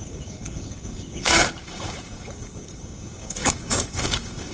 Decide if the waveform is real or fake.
fake